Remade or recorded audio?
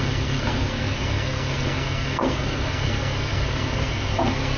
remade